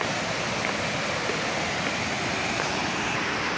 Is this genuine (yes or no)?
yes